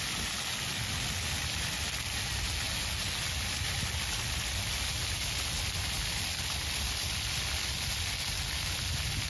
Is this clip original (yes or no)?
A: yes